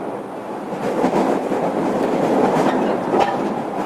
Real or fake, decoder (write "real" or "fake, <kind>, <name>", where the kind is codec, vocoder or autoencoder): real